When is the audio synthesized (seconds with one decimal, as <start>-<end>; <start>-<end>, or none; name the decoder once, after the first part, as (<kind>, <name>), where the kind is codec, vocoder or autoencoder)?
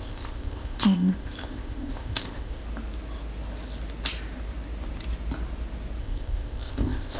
0.0-2.6 (codec, ZipCodec); 6.0-7.2